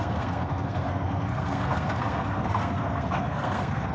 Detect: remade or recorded remade